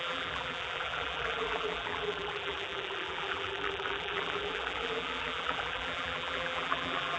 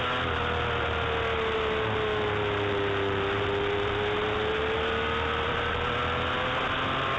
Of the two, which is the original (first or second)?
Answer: second